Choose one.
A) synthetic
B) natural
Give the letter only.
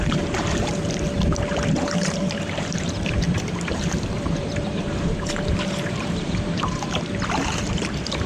A